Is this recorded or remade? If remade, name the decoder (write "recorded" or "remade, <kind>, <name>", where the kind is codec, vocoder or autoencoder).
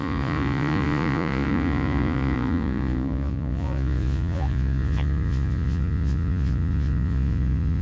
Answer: remade, vocoder, Vocos